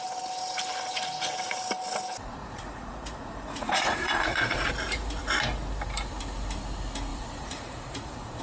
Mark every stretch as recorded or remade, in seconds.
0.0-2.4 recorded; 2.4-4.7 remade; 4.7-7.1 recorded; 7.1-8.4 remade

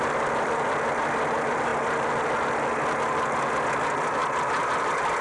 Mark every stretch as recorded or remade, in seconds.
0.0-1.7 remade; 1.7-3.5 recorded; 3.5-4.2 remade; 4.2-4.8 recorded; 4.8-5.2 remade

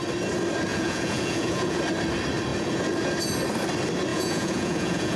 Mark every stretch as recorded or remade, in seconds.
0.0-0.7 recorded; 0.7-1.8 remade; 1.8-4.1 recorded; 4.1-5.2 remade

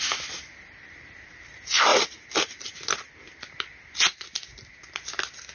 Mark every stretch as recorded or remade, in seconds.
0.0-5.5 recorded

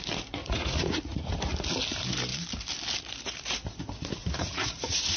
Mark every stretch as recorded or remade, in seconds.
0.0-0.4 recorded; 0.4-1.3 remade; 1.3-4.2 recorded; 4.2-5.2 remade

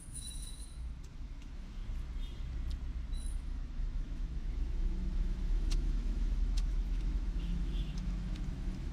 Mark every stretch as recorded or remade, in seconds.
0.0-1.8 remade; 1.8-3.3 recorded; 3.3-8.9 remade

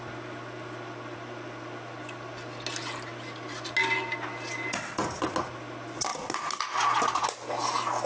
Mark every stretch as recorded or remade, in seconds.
0.0-8.1 recorded

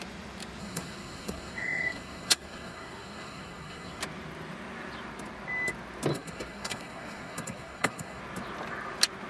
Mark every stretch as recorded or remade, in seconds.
0.0-0.6 recorded; 0.6-4.0 remade; 4.0-6.1 recorded; 6.1-8.2 remade; 8.2-9.3 recorded